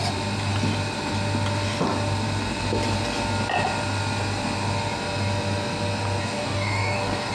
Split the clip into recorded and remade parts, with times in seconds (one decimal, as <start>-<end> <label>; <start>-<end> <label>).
0.0-6.2 recorded; 6.2-7.3 remade